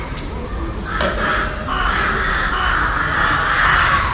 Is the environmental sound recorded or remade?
recorded